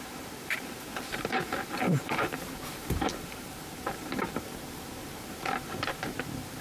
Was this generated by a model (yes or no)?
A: yes